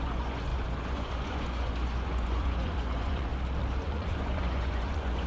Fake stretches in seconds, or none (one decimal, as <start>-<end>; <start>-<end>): 0.0-3.3; 3.8-5.3

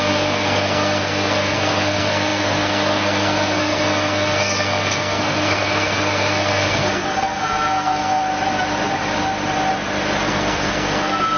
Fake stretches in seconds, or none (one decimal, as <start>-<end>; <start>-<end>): 0.0-8.2; 10.2-11.4

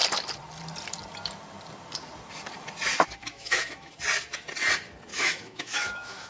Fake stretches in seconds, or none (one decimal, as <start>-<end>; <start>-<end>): 3.2-3.9; 5.1-6.3

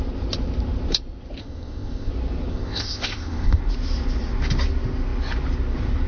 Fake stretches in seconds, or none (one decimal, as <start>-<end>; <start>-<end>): 1.4-2.1; 2.5-3.6

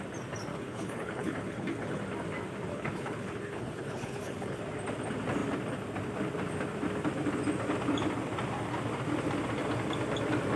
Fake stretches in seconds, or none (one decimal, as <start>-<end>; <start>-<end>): 0.5-2.0; 2.7-4.6

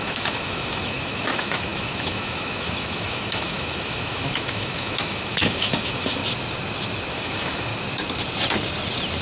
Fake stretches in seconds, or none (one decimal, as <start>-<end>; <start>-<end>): 0.0-6.2; 7.1-7.7

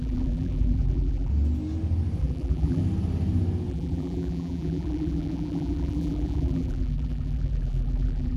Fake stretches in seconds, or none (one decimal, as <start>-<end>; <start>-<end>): 0.0-1.3; 2.2-2.8; 3.7-8.4